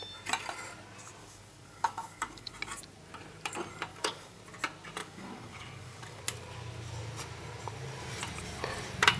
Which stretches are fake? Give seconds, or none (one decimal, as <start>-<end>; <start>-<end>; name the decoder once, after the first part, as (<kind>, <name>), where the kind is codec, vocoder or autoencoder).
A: 1.2-2.5 (codec, DAC); 3.9-4.4; 5.0-6.2